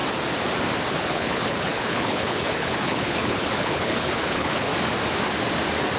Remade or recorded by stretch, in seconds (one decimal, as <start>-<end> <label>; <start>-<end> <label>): 0.0-0.9 recorded; 0.9-4.7 remade; 4.7-6.0 recorded